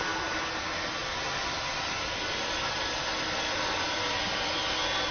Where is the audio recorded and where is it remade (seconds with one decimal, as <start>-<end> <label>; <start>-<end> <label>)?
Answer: 0.0-5.1 recorded